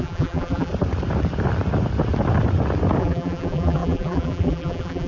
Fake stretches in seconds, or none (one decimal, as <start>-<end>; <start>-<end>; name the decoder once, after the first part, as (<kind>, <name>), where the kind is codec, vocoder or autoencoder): 0.0-0.7 (vocoder, BigVGAN v2); 3.0-5.1